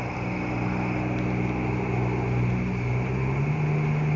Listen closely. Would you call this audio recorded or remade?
recorded